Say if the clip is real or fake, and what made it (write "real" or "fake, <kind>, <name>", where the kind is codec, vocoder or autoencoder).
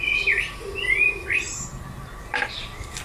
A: real